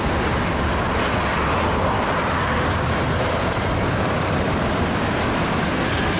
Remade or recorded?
recorded